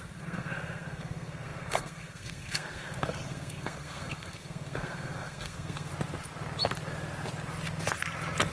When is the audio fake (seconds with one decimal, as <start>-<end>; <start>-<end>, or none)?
0.0-5.9